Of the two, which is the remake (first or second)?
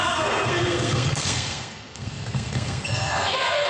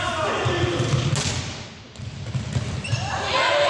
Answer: first